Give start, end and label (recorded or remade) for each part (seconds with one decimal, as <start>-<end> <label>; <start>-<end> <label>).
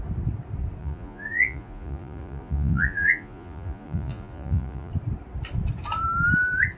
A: 0.0-0.8 recorded; 0.8-4.9 remade; 4.9-6.8 recorded